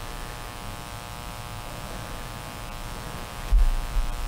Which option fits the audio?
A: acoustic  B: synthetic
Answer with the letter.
A